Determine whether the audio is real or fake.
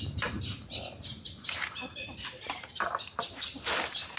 fake